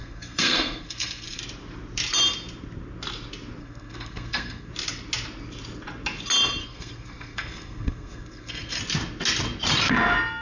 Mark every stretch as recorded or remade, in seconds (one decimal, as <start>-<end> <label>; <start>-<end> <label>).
0.0-1.4 remade; 1.4-3.6 recorded; 3.6-4.7 remade; 4.7-6.6 recorded; 6.6-8.8 remade; 8.8-10.4 recorded